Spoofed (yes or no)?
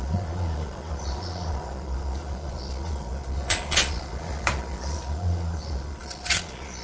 yes